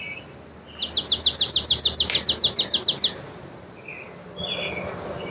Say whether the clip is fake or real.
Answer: real